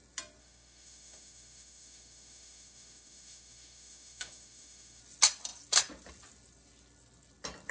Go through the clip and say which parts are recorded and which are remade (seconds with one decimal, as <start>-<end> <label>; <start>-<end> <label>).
0.0-0.4 recorded; 0.4-5.0 remade; 5.0-7.7 recorded